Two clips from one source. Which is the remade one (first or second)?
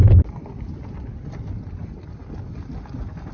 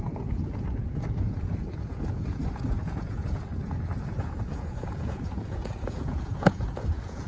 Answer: second